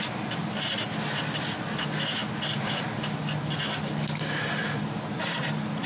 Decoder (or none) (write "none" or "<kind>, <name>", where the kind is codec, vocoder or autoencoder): none